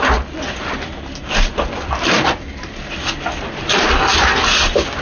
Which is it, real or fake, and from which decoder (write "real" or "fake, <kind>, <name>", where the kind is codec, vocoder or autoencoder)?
real